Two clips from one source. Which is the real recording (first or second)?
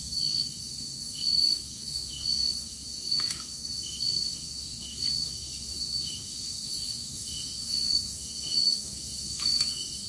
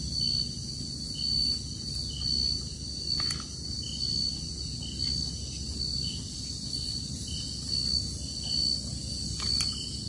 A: second